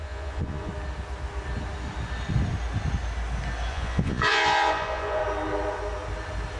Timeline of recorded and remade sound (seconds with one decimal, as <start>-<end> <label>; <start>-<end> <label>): 0.0-0.7 remade; 0.7-3.7 recorded; 3.7-5.2 remade; 5.2-6.6 recorded